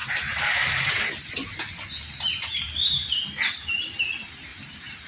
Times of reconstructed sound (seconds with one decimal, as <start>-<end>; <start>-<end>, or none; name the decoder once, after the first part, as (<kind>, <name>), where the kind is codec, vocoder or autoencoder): 0.0-1.3 (vocoder, BigVGAN v2); 2.4-3.1; 4.5-5.1